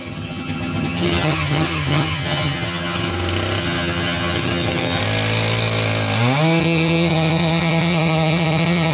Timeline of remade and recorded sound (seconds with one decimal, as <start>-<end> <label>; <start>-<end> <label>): 0.0-3.1 remade; 3.1-3.6 recorded; 3.6-5.0 remade; 5.0-6.6 recorded; 6.6-8.9 remade